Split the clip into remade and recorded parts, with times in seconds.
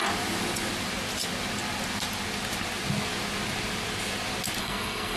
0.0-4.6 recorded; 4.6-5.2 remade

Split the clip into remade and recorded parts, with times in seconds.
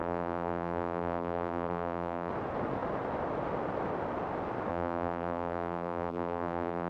0.0-2.3 remade; 2.3-4.7 recorded; 4.7-6.9 remade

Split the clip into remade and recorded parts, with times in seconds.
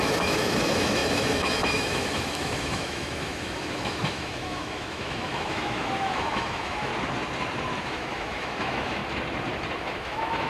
0.0-6.9 remade; 6.9-7.8 recorded; 7.8-9.0 remade; 9.0-9.8 recorded; 9.8-10.5 remade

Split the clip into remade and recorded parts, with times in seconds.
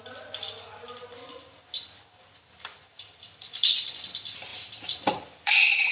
0.0-4.5 recorded; 4.5-5.9 remade